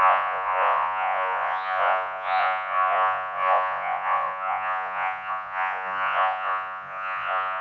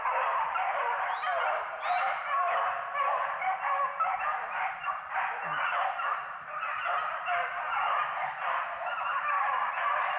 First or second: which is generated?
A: first